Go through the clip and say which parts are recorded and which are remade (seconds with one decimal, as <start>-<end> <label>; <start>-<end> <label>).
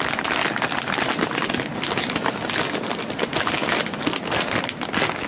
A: 0.0-5.3 recorded